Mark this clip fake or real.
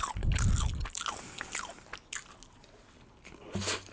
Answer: real